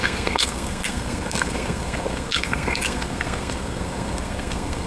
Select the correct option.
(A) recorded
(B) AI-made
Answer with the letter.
B